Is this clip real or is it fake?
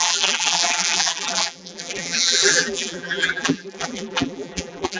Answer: fake